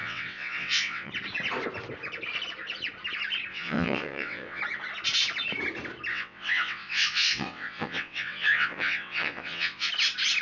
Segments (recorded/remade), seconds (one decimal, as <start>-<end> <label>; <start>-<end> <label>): 0.0-1.1 remade; 1.1-3.5 recorded; 3.5-4.6 remade; 4.6-6.1 recorded; 6.1-9.9 remade; 9.9-10.4 recorded